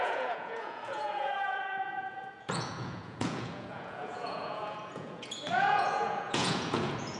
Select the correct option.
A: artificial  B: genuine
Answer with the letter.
A